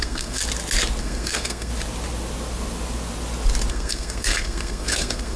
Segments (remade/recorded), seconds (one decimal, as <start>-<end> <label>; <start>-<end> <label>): 0.0-0.4 remade; 0.4-1.0 recorded; 1.0-1.7 remade; 1.7-3.7 recorded; 3.7-5.4 remade

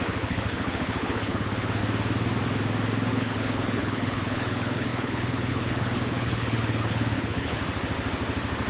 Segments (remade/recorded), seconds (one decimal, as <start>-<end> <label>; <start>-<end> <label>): 0.0-1.8 remade; 1.8-3.1 recorded; 3.1-7.6 remade; 7.6-8.7 recorded